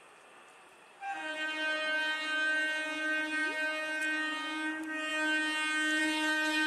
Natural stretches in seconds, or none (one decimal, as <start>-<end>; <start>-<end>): 3.4-4.0; 5.1-6.0